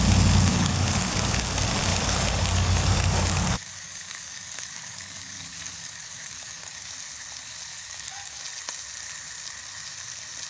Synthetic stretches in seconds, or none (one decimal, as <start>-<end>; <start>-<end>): 0.5-1.4; 1.9-6.9; 7.7-8.4